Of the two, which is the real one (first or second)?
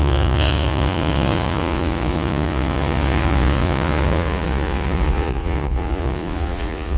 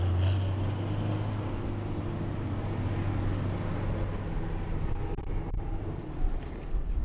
second